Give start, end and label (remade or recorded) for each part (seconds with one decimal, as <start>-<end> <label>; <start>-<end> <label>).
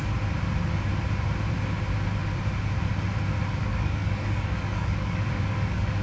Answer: 0.0-3.6 recorded; 3.6-6.0 remade